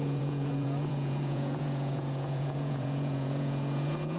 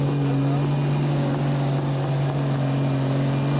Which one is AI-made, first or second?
first